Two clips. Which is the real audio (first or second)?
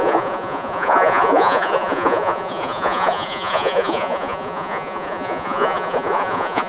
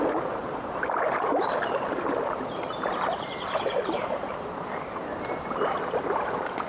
second